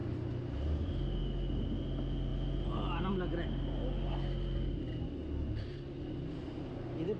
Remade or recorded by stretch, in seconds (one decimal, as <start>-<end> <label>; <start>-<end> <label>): 0.0-7.2 recorded